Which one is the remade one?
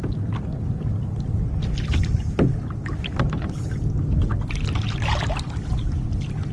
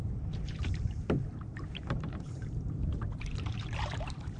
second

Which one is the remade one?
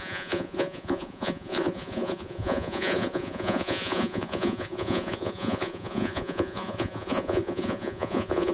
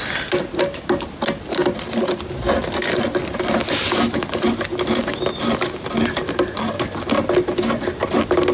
first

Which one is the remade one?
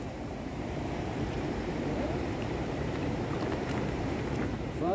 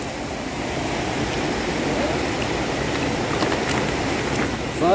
first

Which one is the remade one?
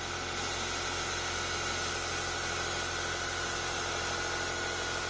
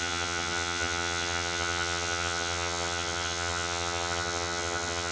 second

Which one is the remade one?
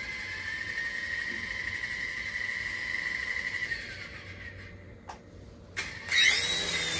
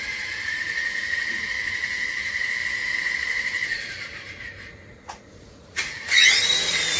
second